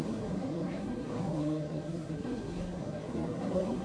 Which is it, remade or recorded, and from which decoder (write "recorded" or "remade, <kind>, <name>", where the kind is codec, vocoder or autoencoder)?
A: remade, codec, SNAC